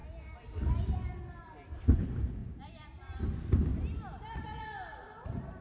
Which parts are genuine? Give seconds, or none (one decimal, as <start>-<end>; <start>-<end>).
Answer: 0.0-2.4; 3.2-3.7